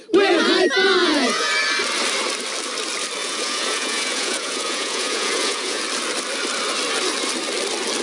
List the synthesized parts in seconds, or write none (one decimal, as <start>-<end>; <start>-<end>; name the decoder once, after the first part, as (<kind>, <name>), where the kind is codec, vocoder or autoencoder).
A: 1.0-1.5 (vocoder, Vocos); 3.2-5.8